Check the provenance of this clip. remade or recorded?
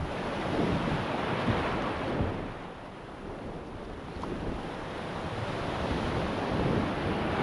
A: recorded